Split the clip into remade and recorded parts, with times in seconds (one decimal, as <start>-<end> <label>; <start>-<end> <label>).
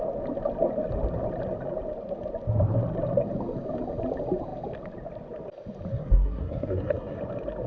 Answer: 0.0-5.9 recorded; 5.9-7.2 remade; 7.2-7.7 recorded